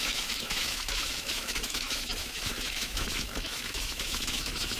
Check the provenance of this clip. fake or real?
fake